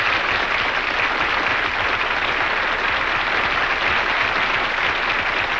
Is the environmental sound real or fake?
real